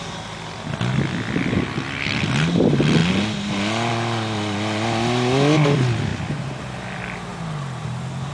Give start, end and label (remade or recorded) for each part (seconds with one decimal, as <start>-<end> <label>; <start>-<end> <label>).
0.0-8.3 recorded